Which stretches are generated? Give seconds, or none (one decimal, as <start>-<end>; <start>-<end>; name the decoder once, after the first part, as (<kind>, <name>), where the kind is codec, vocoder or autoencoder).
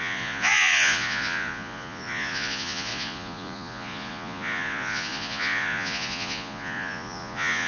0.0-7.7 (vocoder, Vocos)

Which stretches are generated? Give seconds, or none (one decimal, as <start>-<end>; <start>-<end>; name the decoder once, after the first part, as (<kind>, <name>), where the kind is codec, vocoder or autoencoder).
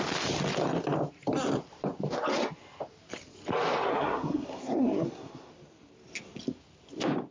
3.9-5.5 (codec, SNAC)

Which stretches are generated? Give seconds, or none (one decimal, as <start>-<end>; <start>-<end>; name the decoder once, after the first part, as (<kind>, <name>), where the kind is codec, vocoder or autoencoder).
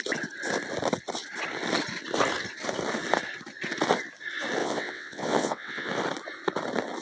4.6-5.9 (vocoder, WaveNeXt)